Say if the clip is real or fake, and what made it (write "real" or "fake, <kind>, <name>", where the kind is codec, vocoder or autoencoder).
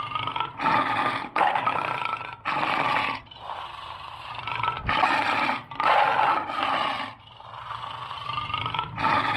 fake, vocoder, BigVGAN v2